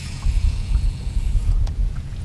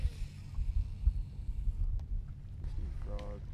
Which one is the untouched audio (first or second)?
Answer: second